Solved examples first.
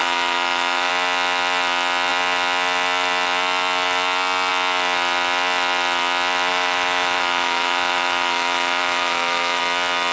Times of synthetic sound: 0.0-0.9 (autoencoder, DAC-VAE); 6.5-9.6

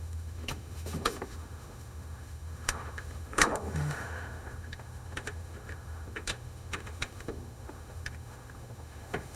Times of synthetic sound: 0.0-9.4 (autoencoder, DAC-VAE)

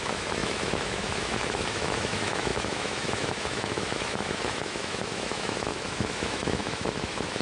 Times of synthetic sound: 0.0-7.4 (autoencoder, DAC-VAE)

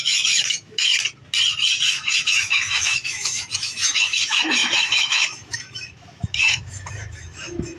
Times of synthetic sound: 0.0-0.9 (autoencoder, DAC-VAE); 1.9-7.8

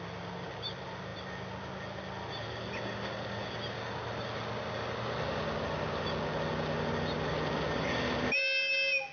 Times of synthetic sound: none